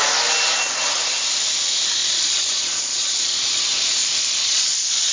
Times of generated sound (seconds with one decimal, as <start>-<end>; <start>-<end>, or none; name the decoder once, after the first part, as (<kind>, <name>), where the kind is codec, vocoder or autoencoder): 2.0-3.6 (vocoder, Vocos); 4.0-5.1